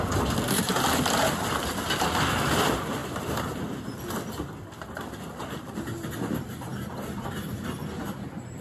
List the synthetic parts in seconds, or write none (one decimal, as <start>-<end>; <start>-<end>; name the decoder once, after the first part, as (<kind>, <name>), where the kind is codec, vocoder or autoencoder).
0.0-0.7 (vocoder, BigVGAN v2); 1.2-8.6